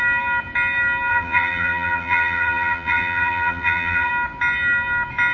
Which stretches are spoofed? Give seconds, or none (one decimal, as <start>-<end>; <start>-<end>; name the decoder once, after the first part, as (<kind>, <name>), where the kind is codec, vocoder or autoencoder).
1.1-4.1 (vocoder, BigVGAN v2)